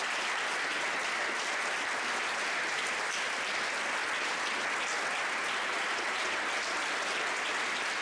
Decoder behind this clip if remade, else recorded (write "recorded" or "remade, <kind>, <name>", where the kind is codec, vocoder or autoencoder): recorded